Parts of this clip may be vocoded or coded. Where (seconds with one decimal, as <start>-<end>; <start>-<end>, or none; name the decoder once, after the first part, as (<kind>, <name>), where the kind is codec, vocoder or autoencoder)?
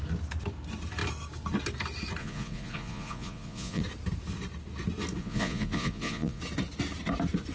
2.2-3.8 (vocoder, Vocos); 5.2-6.4